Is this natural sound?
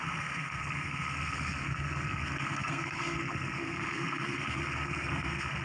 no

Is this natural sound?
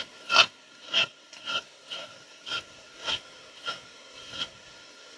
no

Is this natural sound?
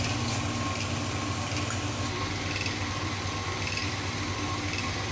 yes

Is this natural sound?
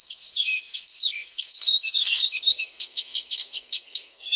no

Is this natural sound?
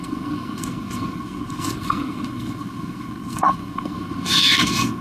no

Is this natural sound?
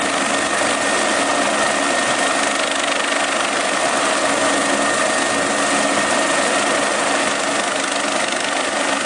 yes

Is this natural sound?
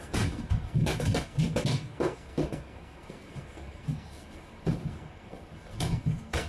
no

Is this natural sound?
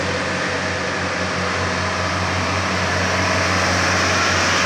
yes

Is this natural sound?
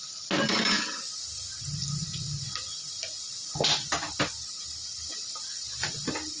yes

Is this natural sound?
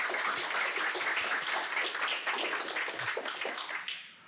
yes